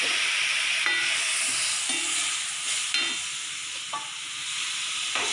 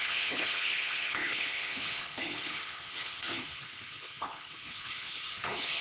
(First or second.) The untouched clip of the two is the first